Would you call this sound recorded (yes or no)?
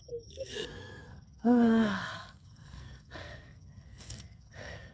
no